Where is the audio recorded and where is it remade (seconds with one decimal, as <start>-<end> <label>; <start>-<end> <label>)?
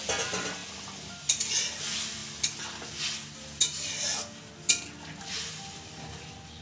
0.0-6.6 recorded